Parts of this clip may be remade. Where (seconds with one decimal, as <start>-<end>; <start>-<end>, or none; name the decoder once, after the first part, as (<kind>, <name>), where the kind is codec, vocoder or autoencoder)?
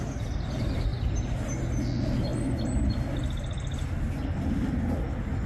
none